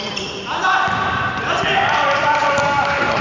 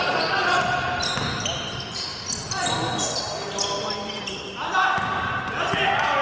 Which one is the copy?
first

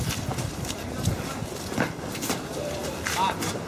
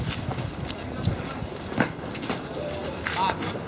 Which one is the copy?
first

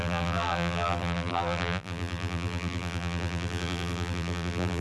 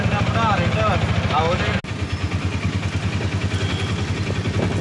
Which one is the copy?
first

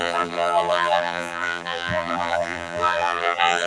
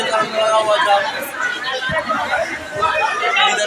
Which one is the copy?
first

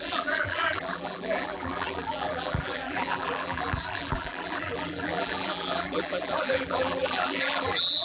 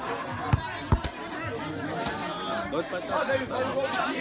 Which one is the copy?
first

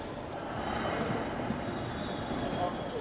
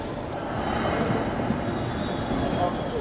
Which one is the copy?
first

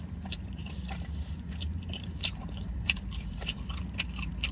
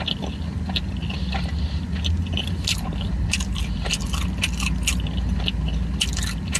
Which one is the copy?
first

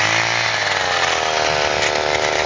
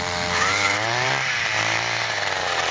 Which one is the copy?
second